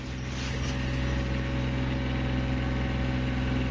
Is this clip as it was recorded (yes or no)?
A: yes